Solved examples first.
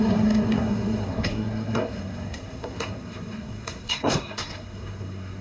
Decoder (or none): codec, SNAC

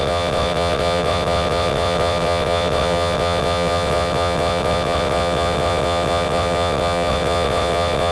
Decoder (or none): vocoder, WaveNeXt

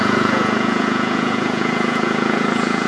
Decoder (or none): vocoder, Vocos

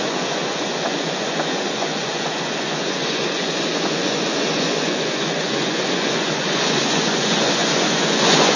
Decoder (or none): vocoder, Vocos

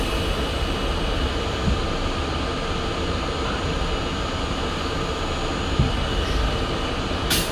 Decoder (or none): none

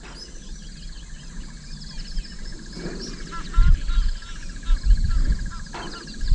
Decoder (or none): none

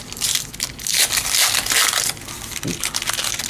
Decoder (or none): none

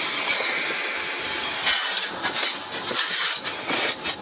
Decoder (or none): none